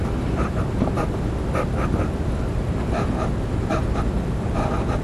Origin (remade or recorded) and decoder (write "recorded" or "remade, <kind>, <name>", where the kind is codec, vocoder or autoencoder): recorded